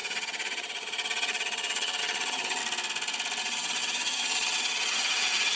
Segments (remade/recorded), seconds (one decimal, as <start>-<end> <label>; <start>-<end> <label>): 0.0-2.6 remade; 2.6-3.4 recorded; 3.4-5.6 remade